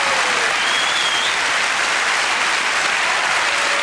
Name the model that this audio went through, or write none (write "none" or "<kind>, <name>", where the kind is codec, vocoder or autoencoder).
none